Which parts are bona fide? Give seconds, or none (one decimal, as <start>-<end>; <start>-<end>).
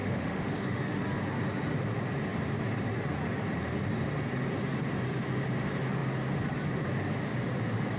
1.0-8.0